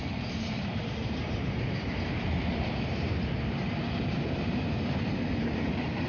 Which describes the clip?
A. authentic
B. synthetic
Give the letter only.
B